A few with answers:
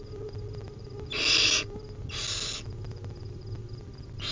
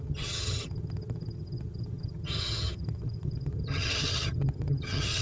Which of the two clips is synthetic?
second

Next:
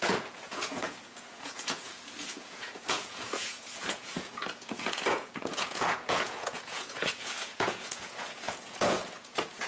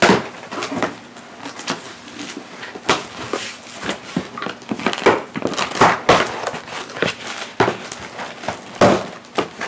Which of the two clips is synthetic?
first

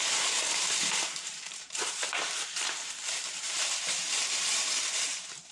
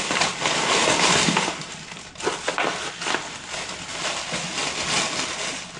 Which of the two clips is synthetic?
first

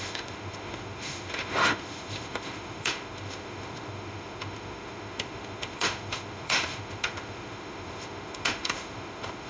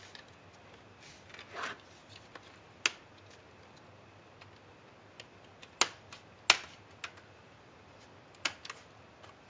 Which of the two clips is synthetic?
first